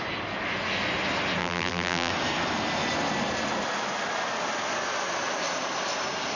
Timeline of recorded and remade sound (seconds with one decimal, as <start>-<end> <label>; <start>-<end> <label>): 0.0-1.4 recorded; 1.4-2.1 remade; 2.1-6.4 recorded